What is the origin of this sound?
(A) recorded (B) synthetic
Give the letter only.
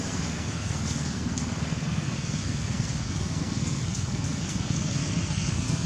B